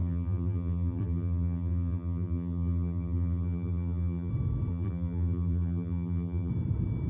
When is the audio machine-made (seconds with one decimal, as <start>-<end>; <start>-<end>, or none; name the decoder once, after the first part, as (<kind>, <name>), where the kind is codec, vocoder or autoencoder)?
0.0-4.3 (vocoder, BigVGAN v2); 4.7-6.5